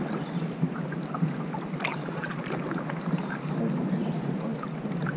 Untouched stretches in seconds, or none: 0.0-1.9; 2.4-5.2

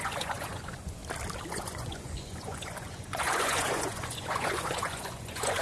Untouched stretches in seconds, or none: 1.0-1.5

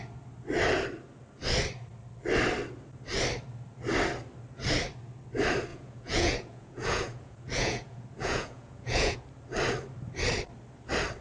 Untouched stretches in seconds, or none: 0.0-5.7; 9.2-11.2

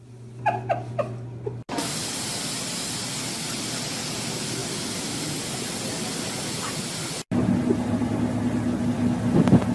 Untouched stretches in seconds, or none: 0.0-9.7